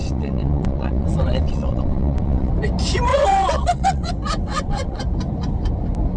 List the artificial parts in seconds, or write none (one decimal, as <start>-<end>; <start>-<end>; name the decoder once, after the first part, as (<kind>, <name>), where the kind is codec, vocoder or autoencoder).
0.0-2.5 (vocoder, WaveNeXt); 3.1-4.1; 4.5-5.0